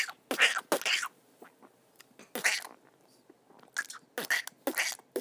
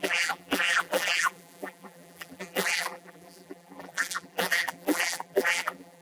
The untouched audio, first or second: first